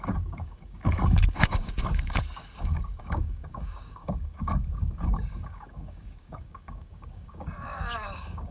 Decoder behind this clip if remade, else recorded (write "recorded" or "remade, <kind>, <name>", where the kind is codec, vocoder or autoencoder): remade, codec, DAC